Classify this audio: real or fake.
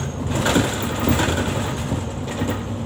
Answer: real